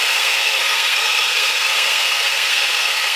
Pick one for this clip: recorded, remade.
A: remade